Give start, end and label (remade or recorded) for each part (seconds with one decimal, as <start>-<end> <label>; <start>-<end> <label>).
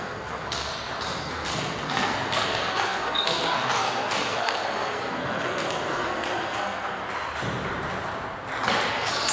0.0-0.7 remade; 0.7-1.2 recorded; 1.2-7.0 remade; 7.0-8.9 recorded; 8.9-9.3 remade